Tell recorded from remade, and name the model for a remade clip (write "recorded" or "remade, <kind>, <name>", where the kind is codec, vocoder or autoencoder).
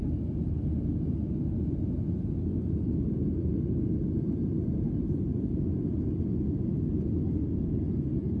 recorded